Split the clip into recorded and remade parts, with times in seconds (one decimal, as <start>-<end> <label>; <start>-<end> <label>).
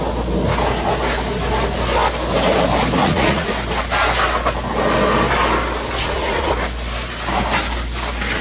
0.0-3.0 recorded; 3.0-3.5 remade; 3.5-6.0 recorded; 6.0-6.5 remade; 6.5-8.4 recorded